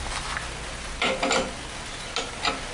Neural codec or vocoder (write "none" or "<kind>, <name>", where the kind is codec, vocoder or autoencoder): none